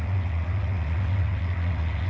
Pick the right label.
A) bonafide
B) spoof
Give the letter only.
B